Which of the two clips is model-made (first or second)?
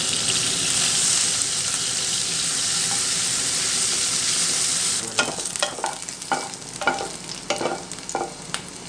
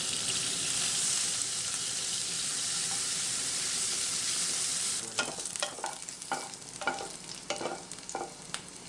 second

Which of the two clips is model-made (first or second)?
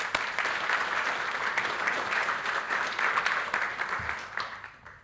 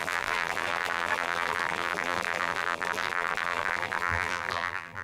second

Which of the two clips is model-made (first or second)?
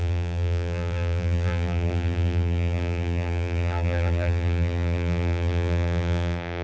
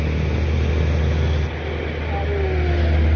first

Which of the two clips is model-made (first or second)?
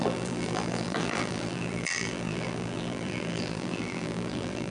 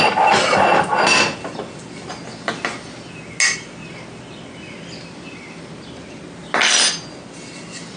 first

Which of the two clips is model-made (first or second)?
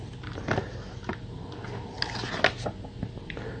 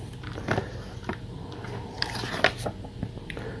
second